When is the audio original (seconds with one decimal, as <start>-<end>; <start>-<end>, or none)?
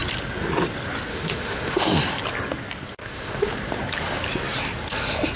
0.0-1.1; 2.0-3.0; 3.5-5.4